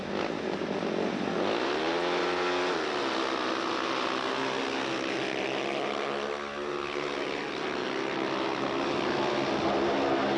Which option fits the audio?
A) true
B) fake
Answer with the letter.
A